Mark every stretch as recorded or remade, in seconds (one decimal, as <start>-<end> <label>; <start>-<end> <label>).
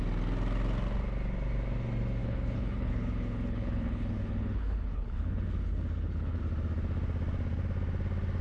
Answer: 0.0-2.2 recorded; 2.2-6.4 remade; 6.4-8.4 recorded